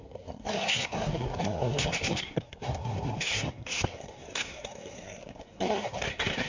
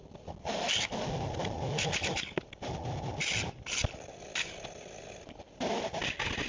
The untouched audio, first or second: second